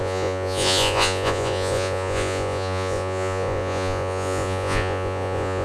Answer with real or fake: fake